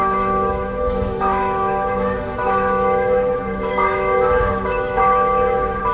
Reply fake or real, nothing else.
fake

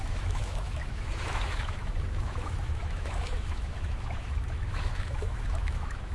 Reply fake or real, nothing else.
fake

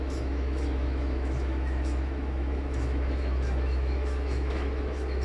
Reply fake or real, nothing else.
fake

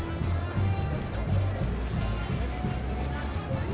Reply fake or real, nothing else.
real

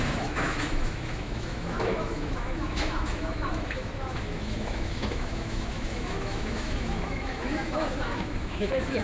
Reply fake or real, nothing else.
fake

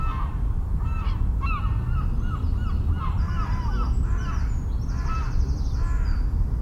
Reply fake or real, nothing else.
real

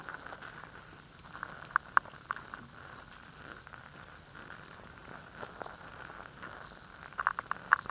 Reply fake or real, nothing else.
real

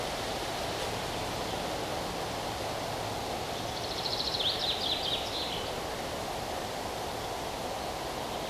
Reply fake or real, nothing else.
real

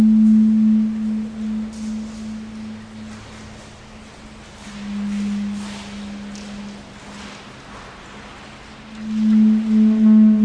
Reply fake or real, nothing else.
real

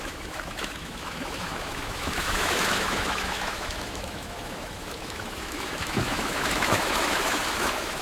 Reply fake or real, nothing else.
fake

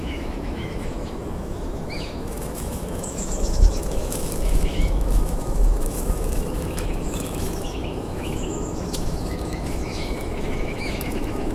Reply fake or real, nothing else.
fake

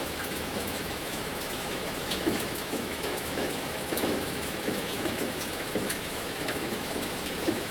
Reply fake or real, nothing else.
fake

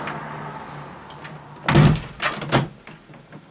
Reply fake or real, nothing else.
real